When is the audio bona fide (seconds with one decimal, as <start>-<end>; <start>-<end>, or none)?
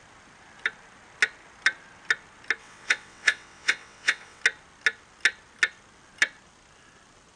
0.0-2.6; 4.4-7.4